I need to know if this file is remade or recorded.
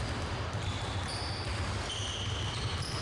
recorded